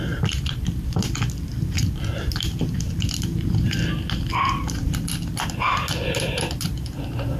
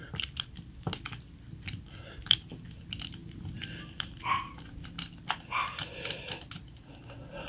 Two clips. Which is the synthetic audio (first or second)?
first